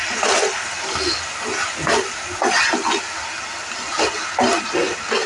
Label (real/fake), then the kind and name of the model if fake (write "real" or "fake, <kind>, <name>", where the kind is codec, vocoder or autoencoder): real